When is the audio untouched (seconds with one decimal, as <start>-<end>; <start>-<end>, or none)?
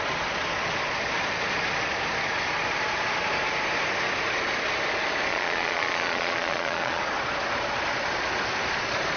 0.0-5.3; 7.0-9.2